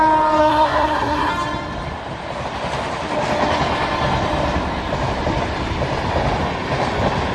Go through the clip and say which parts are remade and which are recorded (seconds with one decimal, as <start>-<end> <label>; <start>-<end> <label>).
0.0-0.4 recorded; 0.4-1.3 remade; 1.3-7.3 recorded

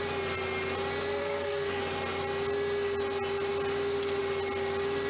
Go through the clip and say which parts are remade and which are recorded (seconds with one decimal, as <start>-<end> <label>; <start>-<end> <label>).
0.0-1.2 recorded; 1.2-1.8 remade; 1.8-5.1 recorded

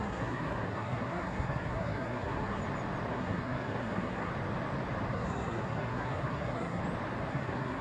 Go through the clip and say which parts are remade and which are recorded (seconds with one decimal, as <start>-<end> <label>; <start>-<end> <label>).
0.0-2.6 remade; 2.6-3.1 recorded; 3.1-4.3 remade; 4.3-5.1 recorded; 5.1-6.8 remade; 6.8-7.3 recorded; 7.3-7.8 remade